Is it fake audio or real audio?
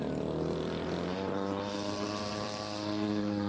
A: fake